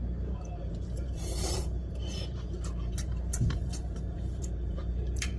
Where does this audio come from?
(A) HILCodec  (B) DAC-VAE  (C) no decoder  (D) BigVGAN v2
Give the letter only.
D